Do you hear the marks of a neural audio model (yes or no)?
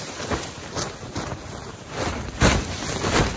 no